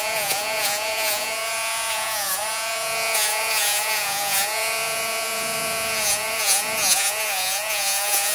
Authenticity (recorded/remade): remade